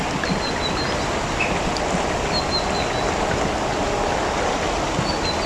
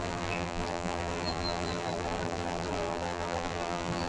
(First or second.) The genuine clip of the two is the first